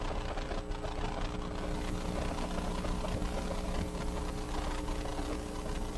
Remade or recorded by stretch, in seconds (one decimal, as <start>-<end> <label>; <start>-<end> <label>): 0.0-6.0 recorded